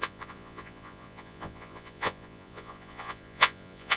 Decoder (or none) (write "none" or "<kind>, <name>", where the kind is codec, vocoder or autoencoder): vocoder, Vocos